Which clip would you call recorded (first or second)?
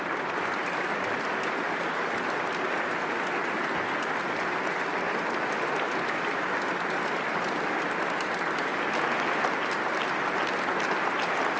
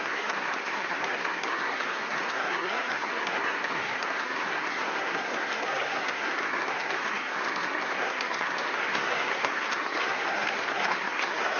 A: first